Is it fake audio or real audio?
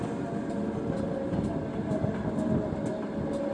real